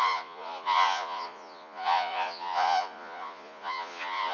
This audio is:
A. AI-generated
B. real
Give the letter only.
A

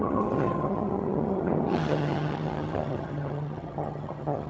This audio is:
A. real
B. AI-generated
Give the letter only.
B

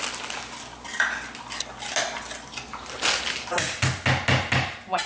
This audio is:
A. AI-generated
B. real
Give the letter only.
B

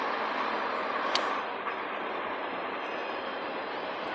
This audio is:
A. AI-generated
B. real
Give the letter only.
B